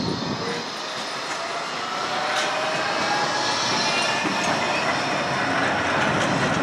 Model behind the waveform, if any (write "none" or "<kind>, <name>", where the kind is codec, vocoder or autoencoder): none